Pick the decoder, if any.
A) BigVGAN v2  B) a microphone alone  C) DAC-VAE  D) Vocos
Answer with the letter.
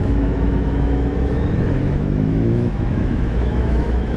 C